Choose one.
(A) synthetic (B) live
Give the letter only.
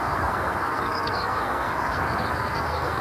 A